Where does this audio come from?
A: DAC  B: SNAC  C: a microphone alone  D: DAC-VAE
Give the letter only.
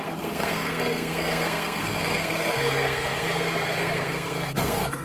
B